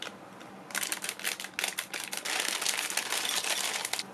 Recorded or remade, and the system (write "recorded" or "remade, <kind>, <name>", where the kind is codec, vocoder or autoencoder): recorded